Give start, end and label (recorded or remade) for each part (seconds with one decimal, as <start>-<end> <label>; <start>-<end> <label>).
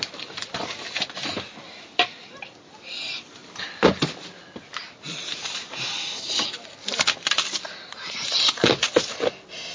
0.0-5.3 recorded; 5.3-5.8 remade; 5.8-9.7 recorded